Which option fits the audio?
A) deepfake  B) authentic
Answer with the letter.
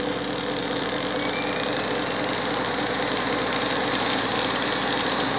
B